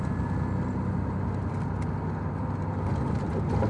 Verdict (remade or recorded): recorded